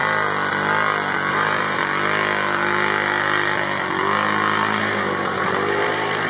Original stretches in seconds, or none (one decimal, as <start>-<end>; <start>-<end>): 0.0-1.3; 1.8-4.8